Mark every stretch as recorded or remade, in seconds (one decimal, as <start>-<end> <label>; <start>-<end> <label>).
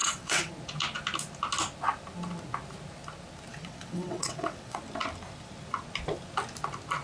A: 0.0-0.5 remade; 0.5-3.5 recorded; 3.5-4.8 remade; 4.8-7.0 recorded